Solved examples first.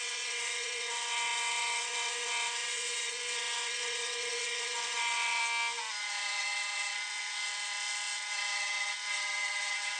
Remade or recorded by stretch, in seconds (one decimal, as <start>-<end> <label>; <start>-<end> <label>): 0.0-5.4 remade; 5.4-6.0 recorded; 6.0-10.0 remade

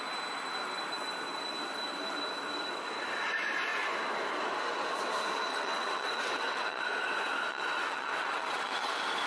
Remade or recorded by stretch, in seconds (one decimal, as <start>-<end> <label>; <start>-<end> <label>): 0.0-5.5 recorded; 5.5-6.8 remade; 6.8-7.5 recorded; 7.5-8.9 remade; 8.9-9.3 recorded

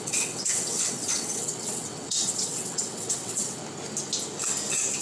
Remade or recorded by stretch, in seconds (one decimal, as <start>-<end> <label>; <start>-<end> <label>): 0.0-3.6 remade; 3.6-5.0 recorded

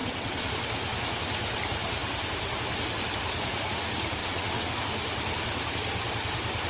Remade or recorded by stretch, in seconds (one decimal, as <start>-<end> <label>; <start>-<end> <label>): 0.0-0.5 remade; 0.5-4.2 recorded; 4.2-4.7 remade; 4.7-6.7 recorded

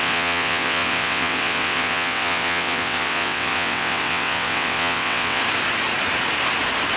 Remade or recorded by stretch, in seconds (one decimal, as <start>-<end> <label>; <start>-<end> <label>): 0.0-5.4 remade; 5.4-7.0 recorded

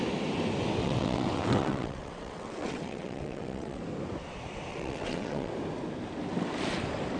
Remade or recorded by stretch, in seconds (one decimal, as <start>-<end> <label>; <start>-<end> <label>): 0.0-0.8 recorded; 0.8-3.8 remade; 3.8-4.7 recorded; 4.7-5.5 remade; 5.5-7.2 recorded